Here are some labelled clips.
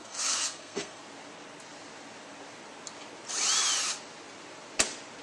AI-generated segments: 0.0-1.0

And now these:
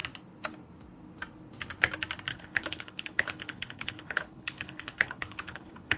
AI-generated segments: 2.3-6.0

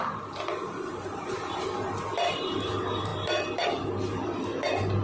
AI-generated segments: 0.6-2.4

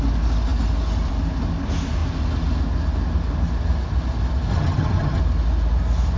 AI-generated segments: 4.5-5.2

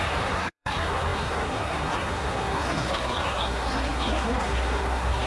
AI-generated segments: 0.0-5.3